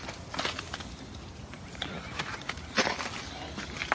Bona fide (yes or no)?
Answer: yes